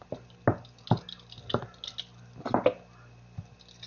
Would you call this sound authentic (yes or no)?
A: yes